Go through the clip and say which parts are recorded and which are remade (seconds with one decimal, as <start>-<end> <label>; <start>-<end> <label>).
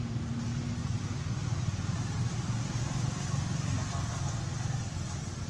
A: 0.0-5.5 recorded